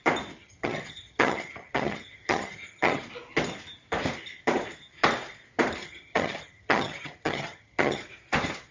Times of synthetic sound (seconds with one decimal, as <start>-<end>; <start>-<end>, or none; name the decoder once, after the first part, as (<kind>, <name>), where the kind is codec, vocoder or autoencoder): 0.4-3.0 (vocoder, HiFi-GAN); 5.8-8.0